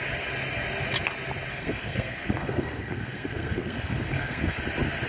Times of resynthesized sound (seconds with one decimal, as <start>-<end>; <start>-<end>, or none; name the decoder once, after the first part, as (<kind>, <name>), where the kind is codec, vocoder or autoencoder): 1.5-4.6 (codec, SNAC)